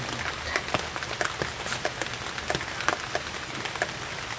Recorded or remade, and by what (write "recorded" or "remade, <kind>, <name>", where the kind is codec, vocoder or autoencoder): recorded